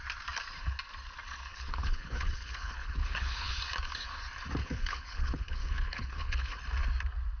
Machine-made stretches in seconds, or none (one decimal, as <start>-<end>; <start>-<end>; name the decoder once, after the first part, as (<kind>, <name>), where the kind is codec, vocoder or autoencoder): 1.5-3.6 (codec, HILCodec); 4.6-6.6